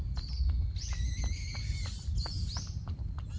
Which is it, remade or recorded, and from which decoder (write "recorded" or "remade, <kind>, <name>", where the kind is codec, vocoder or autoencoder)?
recorded